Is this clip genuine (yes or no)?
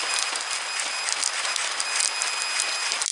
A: yes